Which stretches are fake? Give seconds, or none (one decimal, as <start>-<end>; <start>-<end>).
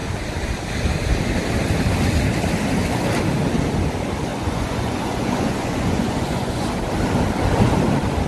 4.3-6.7